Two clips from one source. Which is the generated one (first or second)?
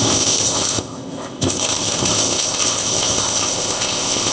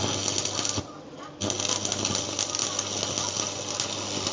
first